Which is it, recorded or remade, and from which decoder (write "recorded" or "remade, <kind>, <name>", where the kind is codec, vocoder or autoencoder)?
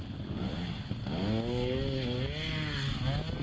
recorded